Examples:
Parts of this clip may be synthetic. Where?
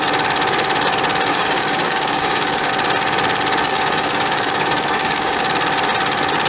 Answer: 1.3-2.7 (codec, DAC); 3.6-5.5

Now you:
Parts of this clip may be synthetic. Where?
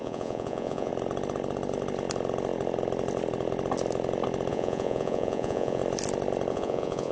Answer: 0.0-0.9 (vocoder, Vocos); 4.5-5.8; 6.5-7.1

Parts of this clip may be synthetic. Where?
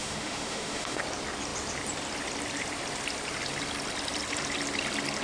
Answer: 0.0-1.0 (autoencoder, DAC-VAE)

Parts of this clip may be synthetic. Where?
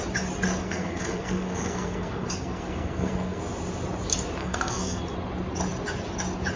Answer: 0.6-3.4 (codec, SNAC); 4.4-5.0